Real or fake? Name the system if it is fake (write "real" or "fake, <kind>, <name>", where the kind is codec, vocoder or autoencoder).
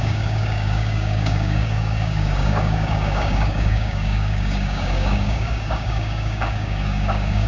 fake, codec, DAC